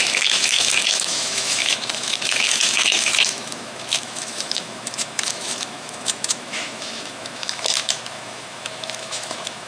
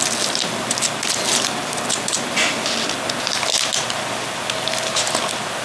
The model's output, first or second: first